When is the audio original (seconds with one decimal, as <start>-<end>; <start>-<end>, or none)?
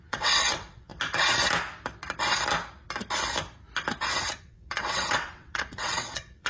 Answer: 0.9-4.4